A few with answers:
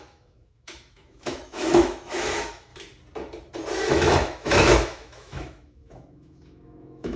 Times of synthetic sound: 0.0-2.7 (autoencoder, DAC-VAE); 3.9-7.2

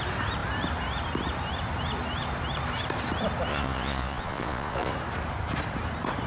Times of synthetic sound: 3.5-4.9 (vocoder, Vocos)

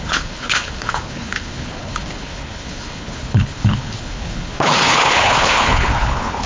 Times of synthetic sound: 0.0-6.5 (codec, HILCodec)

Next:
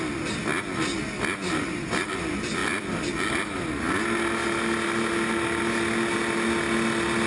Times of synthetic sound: none